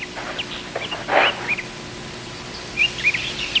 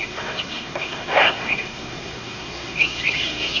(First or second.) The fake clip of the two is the second